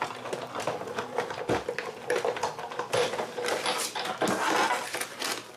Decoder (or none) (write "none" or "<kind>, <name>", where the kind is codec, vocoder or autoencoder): none